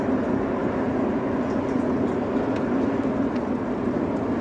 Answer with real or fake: real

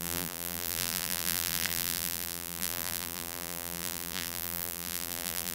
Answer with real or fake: fake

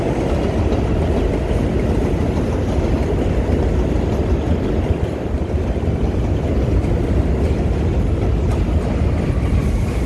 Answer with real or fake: real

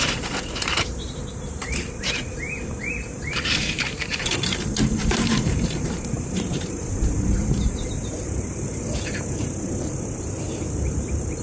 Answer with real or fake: fake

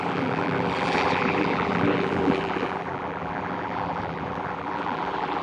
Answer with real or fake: fake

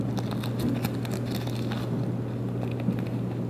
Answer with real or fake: real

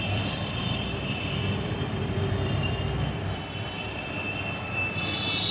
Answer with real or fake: fake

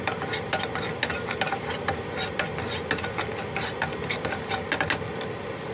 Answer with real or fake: real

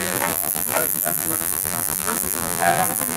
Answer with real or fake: fake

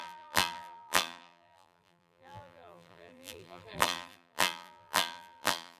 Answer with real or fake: fake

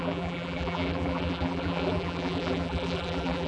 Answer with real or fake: fake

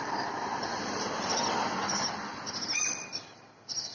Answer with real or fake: fake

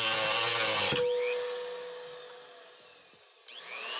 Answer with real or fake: real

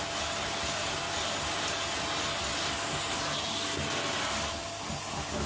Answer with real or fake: real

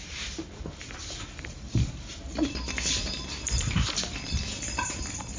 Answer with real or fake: fake